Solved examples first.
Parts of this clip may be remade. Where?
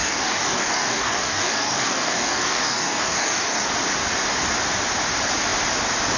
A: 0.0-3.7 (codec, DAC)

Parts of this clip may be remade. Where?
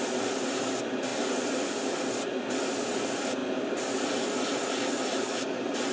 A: none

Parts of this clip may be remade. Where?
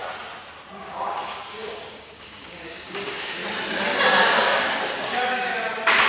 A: 0.8-3.4 (codec, DAC); 4.1-5.5